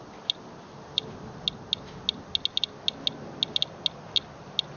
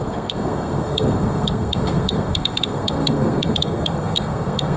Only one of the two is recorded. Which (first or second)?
first